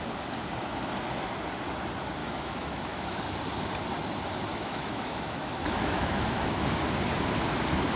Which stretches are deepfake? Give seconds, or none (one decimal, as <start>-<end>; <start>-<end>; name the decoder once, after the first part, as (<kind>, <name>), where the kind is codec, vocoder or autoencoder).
2.2-3.2 (autoencoder, DAC-VAE); 4.5-6.7